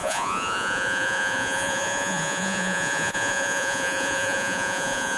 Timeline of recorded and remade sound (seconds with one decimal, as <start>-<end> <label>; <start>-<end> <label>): 0.0-5.2 remade